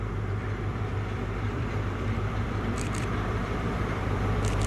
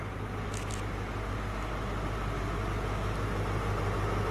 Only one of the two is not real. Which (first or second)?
first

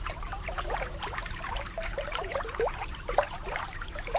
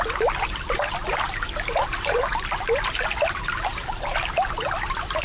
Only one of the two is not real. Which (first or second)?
first